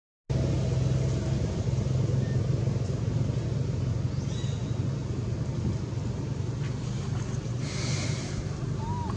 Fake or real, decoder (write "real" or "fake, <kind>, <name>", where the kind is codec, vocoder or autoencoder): real